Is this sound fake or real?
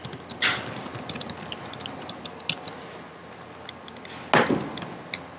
real